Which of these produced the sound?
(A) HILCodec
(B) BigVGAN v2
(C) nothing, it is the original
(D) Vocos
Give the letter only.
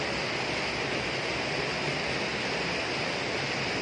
C